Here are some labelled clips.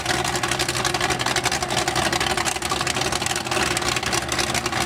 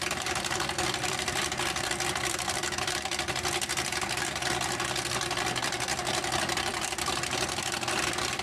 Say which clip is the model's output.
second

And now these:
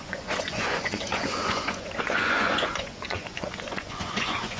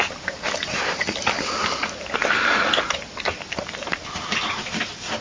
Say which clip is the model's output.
first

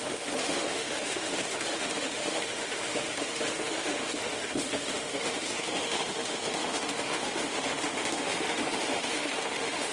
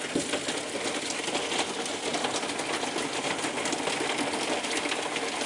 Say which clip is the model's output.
first